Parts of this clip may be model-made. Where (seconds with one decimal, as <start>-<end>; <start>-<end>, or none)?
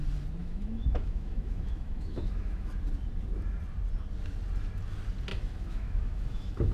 0.4-2.7; 5.3-6.7